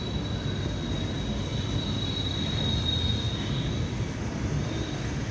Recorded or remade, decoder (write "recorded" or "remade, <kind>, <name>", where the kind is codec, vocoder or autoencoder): recorded